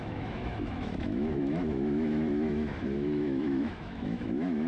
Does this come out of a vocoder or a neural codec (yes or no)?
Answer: yes